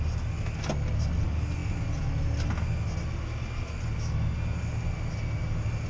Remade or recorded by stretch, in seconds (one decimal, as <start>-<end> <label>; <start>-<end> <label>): 0.0-5.9 recorded